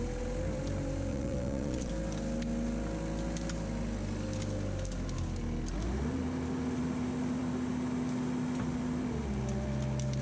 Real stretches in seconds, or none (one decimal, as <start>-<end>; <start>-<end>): 0.0-1.1; 1.9-10.2